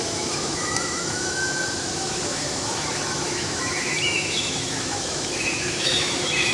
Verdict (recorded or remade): remade